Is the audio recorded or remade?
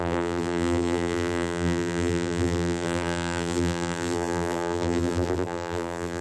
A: remade